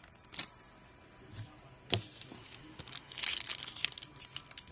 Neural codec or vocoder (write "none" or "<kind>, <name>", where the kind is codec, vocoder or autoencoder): none